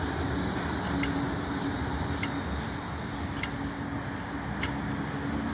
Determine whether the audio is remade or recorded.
recorded